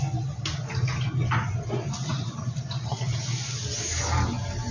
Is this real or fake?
real